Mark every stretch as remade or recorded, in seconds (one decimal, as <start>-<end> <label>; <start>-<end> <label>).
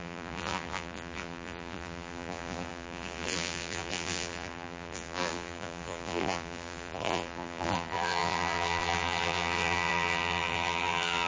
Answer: 0.0-11.3 remade